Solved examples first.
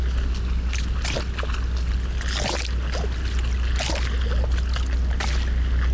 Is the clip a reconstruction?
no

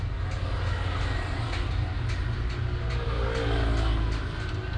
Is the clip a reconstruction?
no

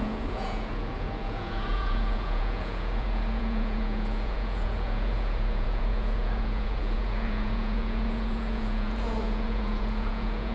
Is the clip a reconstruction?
yes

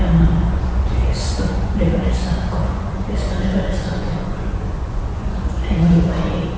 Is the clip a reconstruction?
yes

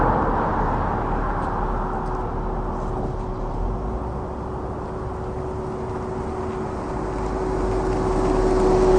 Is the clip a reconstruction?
no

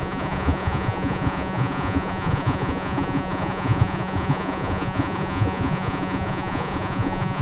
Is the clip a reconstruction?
yes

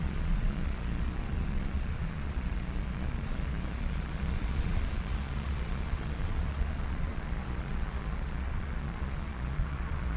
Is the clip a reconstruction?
yes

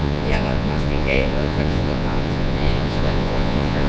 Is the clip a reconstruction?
yes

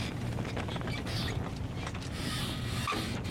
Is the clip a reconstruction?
no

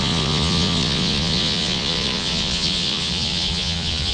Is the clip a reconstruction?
yes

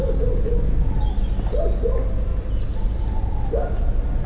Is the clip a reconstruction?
no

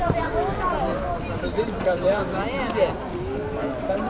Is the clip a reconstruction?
no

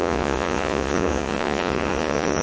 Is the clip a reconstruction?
yes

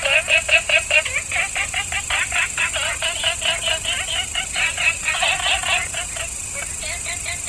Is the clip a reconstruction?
no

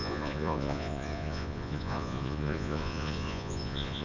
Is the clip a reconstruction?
yes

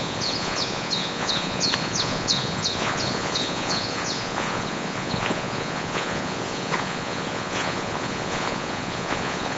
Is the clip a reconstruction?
yes